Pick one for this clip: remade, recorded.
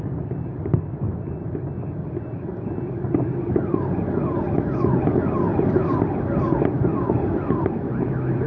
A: recorded